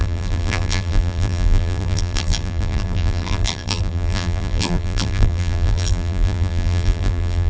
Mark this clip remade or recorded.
remade